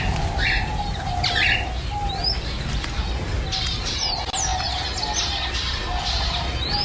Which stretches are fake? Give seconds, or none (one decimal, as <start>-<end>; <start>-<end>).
none